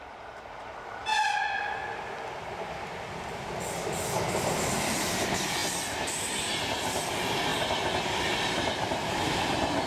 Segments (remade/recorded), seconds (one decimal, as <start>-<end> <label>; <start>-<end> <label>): 0.0-5.6 remade; 5.6-6.5 recorded; 6.5-7.5 remade; 7.5-9.2 recorded; 9.2-9.9 remade